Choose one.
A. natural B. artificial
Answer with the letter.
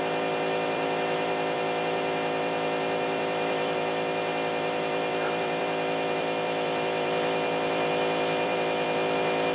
B